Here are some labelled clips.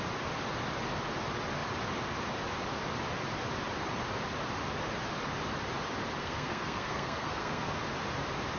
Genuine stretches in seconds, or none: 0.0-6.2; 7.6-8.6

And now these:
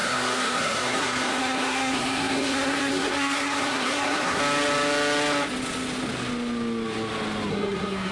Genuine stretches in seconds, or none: 4.4-7.5

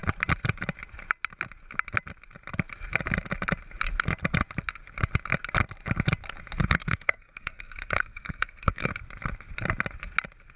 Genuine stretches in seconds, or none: 0.0-6.6; 8.9-10.6

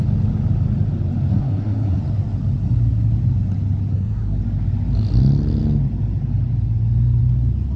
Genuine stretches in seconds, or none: 0.0-1.3; 2.0-3.9; 4.4-7.8

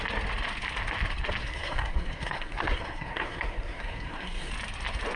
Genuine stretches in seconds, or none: 0.0-1.4; 4.5-5.2

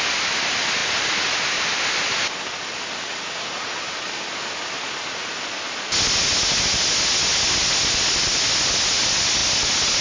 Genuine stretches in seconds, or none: 0.0-10.0

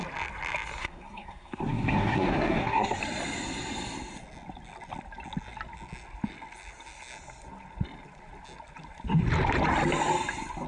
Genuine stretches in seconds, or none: 0.0-0.8; 3.0-10.7